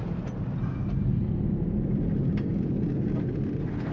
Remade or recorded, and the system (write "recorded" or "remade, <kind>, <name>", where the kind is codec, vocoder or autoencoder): recorded